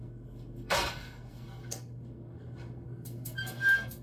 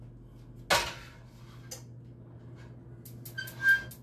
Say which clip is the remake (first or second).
first